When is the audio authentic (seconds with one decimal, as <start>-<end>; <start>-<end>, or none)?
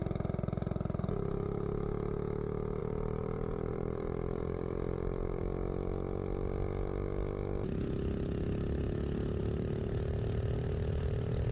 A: 0.0-2.8; 5.4-9.4